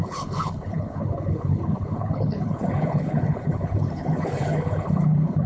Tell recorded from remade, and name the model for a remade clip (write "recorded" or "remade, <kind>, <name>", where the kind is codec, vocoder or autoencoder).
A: remade, codec, HILCodec